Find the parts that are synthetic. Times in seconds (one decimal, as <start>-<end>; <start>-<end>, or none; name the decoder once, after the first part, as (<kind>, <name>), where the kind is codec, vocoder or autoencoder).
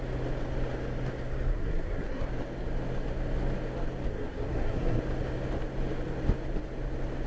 1.5-2.3 (codec, SNAC); 4.1-5.0